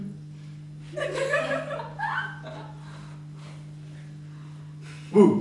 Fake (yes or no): no